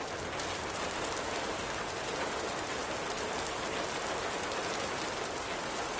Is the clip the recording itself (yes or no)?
yes